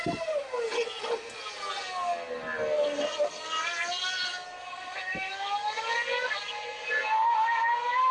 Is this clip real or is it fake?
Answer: real